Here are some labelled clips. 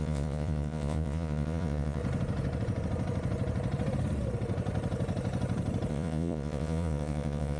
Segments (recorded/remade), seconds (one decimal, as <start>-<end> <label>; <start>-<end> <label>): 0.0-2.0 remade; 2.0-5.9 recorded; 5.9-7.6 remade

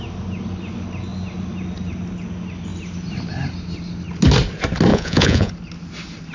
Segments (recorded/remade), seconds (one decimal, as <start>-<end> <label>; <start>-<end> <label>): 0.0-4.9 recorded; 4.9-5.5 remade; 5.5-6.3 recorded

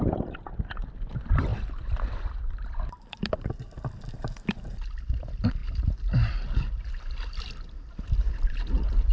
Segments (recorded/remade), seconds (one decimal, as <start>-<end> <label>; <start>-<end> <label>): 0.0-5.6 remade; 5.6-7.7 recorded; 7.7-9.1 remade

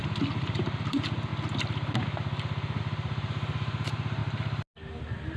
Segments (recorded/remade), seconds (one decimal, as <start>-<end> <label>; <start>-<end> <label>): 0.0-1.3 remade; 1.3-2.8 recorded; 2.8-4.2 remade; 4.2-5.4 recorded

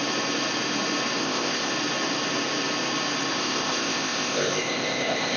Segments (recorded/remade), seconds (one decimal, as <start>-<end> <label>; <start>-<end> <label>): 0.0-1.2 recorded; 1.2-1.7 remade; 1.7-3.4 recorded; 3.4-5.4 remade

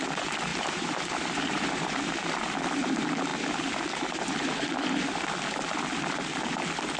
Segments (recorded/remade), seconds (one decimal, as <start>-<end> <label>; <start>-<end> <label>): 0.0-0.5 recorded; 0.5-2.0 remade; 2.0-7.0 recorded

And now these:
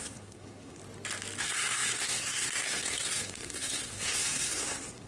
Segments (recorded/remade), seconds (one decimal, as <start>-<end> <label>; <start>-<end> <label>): 0.0-0.8 remade; 0.8-1.4 recorded; 1.4-5.1 remade

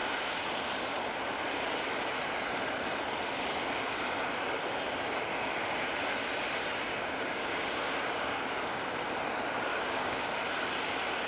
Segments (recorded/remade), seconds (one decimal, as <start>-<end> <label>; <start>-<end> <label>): 0.0-6.9 recorded; 6.9-8.9 remade; 8.9-9.7 recorded; 9.7-10.3 remade; 10.3-11.3 recorded